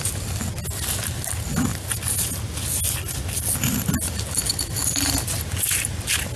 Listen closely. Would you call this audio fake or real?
real